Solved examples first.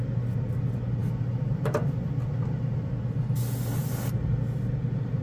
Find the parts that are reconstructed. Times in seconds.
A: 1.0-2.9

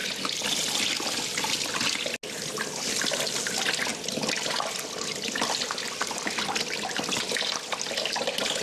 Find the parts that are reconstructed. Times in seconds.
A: none